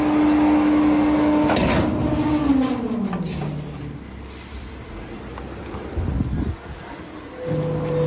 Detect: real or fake real